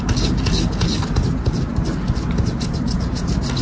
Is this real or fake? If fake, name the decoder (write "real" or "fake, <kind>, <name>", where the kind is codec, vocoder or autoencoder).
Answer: real